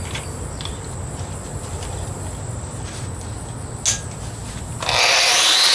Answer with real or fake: real